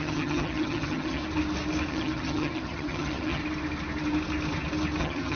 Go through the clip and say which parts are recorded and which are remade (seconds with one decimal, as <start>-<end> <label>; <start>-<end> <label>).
0.0-1.2 remade; 1.2-1.9 recorded; 1.9-3.4 remade; 3.4-5.0 recorded; 5.0-5.4 remade